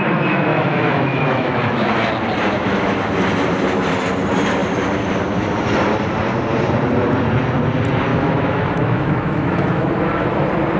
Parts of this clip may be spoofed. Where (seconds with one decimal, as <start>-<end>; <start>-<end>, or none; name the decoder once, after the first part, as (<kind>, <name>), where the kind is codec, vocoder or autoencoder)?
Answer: 0.5-2.1 (autoencoder, DAC-VAE); 8.1-9.9